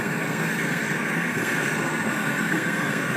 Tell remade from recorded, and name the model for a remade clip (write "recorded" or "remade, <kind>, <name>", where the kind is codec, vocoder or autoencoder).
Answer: remade, codec, SNAC